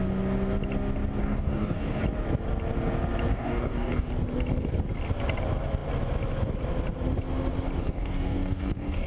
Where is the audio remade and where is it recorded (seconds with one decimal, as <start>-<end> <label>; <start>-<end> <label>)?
0.0-1.2 recorded; 1.2-2.0 remade; 2.0-3.3 recorded; 3.3-4.1 remade; 4.1-7.8 recorded; 7.8-9.1 remade